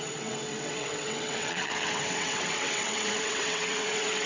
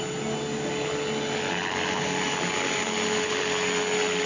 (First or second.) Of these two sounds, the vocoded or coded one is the first